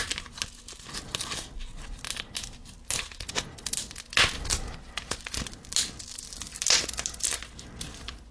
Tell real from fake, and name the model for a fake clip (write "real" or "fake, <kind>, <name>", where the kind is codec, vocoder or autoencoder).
real